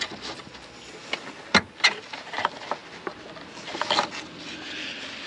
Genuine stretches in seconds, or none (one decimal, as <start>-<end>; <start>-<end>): 0.0-5.3